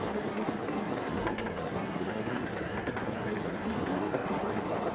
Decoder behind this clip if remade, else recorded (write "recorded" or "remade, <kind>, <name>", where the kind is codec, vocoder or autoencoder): remade, codec, SNAC